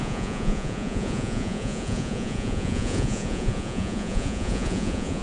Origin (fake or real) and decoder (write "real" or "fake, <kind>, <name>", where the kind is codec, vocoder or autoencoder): fake, vocoder, Vocos